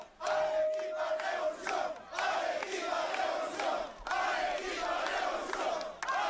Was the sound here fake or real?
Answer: real